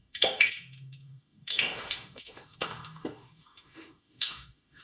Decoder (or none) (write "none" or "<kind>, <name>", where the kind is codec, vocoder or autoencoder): autoencoder, DAC-VAE